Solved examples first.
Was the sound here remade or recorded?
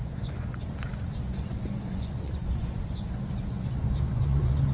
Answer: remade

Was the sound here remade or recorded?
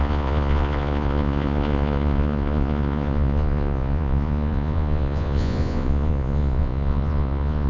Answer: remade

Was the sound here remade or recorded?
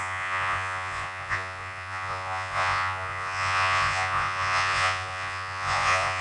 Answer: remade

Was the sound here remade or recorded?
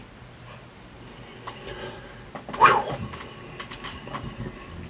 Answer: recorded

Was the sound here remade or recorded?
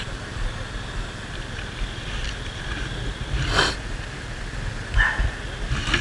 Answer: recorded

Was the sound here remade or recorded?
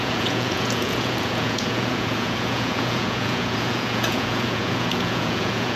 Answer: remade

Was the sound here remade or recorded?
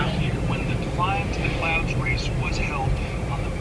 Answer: recorded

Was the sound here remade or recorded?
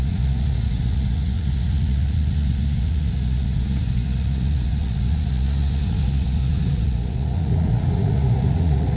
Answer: remade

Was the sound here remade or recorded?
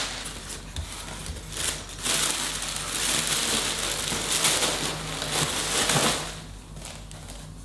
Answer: recorded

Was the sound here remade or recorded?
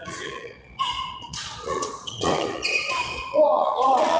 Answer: remade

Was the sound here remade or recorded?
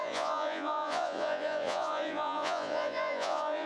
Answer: remade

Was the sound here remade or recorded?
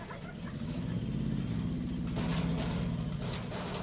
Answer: recorded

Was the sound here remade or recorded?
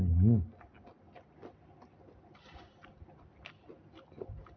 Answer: recorded